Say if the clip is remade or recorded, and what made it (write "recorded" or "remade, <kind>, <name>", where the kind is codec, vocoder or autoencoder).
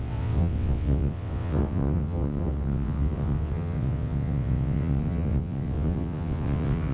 remade, vocoder, WaveNeXt